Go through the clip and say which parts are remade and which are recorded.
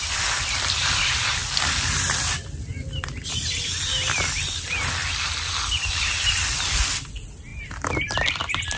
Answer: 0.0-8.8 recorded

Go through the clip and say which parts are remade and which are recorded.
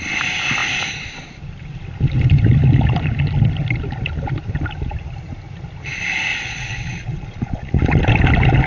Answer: 0.0-6.3 recorded; 6.3-7.8 remade; 7.8-8.7 recorded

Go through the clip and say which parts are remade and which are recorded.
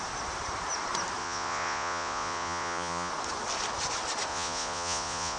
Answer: 0.0-1.2 recorded; 1.2-3.1 remade; 3.1-4.3 recorded; 4.3-5.4 remade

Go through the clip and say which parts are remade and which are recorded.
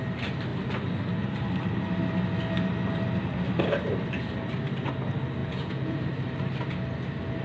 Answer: 0.0-5.4 recorded; 5.4-6.0 remade; 6.0-7.4 recorded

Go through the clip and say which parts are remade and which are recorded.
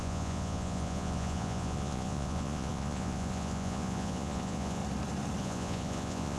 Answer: 0.0-4.8 remade; 4.8-5.4 recorded; 5.4-6.4 remade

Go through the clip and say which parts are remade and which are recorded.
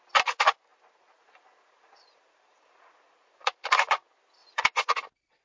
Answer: 0.0-0.7 recorded; 0.7-3.6 remade; 3.6-4.4 recorded; 4.4-4.9 remade; 4.9-5.4 recorded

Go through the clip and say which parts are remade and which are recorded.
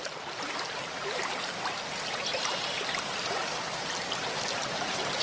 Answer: 0.0-5.2 recorded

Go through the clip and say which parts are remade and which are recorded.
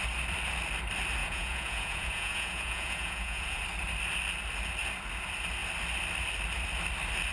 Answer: 0.0-1.2 recorded; 1.2-3.6 remade; 3.6-7.3 recorded